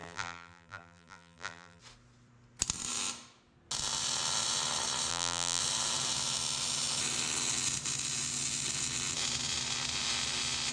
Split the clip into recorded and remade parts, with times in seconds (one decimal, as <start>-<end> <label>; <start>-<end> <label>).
0.0-1.8 remade; 1.8-5.1 recorded; 5.1-5.6 remade; 5.6-10.7 recorded